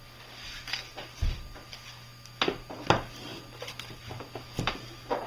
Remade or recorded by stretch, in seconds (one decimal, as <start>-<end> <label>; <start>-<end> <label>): 0.0-5.3 recorded